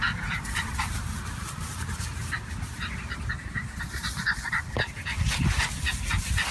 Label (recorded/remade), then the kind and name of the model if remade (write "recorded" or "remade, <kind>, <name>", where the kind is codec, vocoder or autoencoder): recorded